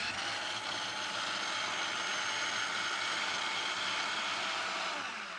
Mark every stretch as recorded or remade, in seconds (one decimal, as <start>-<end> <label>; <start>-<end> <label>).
0.0-5.4 recorded